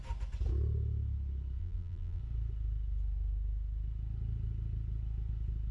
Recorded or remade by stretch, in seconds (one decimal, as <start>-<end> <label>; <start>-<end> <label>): 0.0-1.6 recorded; 1.6-2.2 remade; 2.2-5.7 recorded